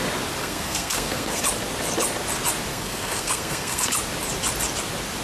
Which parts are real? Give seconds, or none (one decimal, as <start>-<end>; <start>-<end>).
0.0-0.4; 1.4-2.7; 3.9-5.2